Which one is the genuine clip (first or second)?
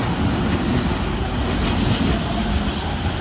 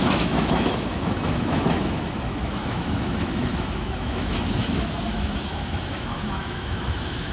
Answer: first